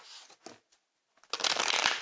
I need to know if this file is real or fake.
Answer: real